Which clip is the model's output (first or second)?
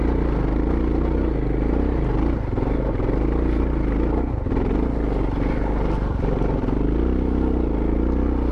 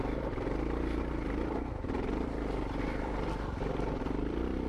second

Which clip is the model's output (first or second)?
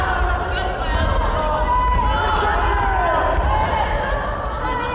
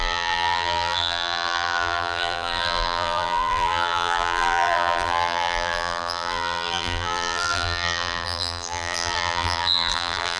second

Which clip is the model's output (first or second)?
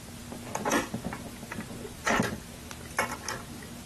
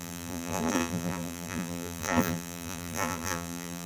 second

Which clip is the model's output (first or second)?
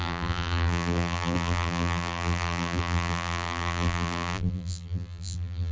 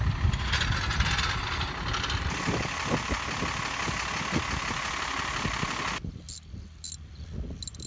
first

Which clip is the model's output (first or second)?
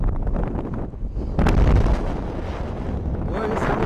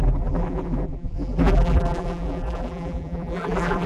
second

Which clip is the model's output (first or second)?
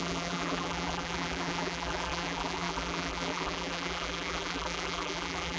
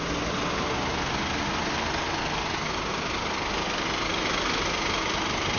first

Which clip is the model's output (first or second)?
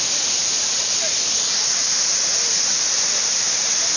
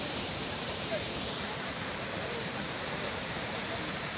second